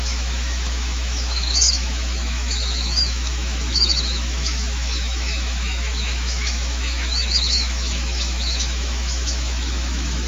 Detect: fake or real fake